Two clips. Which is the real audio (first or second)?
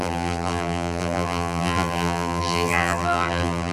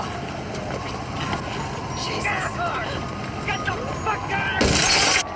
second